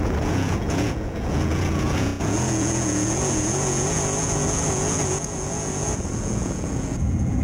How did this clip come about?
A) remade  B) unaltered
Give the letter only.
A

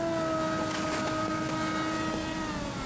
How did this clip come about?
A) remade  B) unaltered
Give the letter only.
B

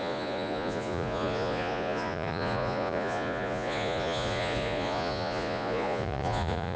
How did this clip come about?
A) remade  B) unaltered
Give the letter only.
A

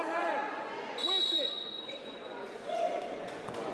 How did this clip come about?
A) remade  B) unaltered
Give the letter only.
A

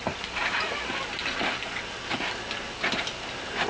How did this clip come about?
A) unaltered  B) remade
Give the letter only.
A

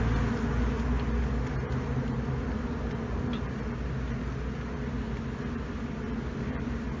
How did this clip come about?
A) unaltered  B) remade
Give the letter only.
A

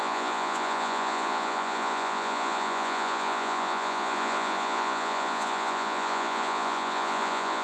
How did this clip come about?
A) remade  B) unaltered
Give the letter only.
A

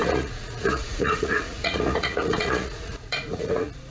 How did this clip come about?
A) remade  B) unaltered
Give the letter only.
A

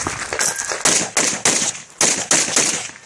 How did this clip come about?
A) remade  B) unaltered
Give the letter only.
B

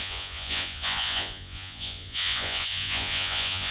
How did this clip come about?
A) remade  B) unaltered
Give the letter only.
A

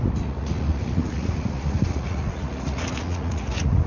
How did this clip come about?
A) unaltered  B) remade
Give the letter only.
B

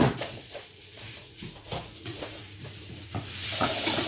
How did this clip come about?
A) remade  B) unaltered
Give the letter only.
A